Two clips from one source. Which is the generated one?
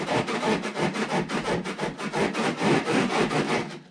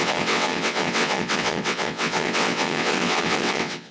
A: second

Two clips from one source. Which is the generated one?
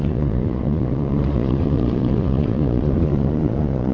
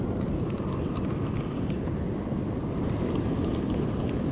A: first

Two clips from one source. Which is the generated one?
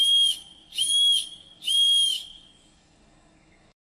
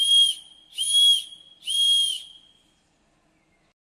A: first